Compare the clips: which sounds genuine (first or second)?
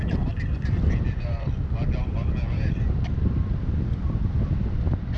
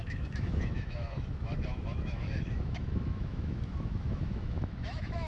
first